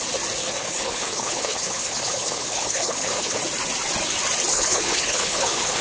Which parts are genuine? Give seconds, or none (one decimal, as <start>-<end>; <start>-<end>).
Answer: 0.0-0.4; 3.4-4.5